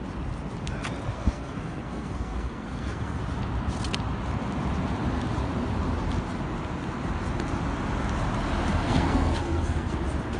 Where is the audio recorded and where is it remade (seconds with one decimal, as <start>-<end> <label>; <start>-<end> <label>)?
0.0-1.1 recorded; 1.1-3.2 remade; 3.2-8.7 recorded; 8.7-10.0 remade; 10.0-10.4 recorded